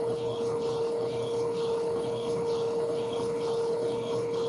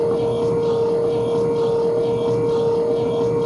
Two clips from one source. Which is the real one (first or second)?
second